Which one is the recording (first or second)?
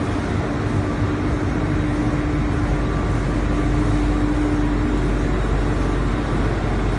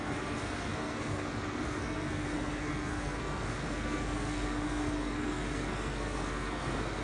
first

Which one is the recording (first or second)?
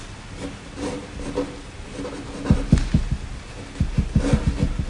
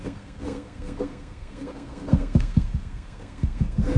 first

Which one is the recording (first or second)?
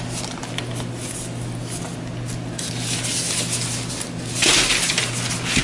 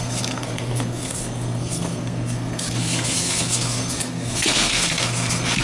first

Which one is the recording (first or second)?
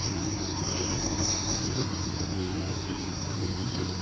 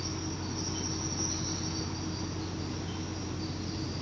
second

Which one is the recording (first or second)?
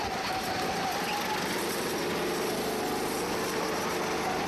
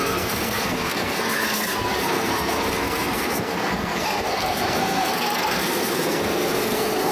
first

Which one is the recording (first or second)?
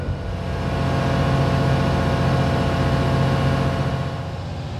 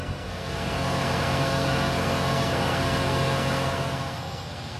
first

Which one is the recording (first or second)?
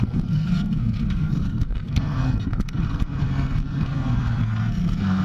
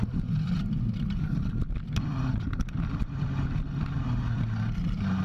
second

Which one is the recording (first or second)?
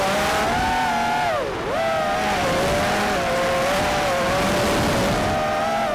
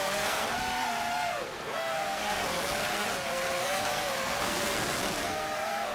first